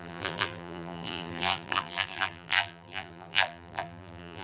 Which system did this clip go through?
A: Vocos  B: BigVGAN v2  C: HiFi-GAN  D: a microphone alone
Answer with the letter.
B